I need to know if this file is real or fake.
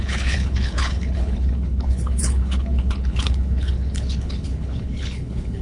fake